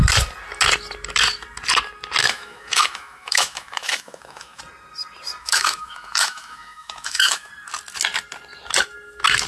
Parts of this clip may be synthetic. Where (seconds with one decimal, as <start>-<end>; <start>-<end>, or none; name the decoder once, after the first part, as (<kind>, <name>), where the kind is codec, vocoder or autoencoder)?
2.2-4.6 (autoencoder, DAC-VAE); 5.4-7.5